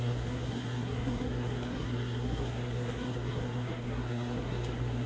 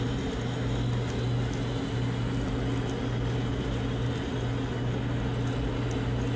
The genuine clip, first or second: second